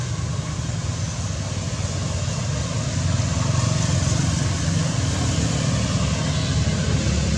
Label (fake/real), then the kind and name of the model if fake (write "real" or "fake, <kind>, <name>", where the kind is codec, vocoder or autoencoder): real